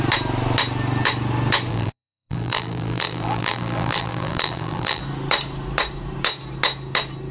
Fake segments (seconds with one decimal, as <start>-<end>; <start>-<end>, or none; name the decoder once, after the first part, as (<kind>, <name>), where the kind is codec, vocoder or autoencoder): 1.7-5.0 (vocoder, BigVGAN v2)